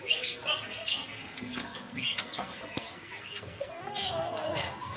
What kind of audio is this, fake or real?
fake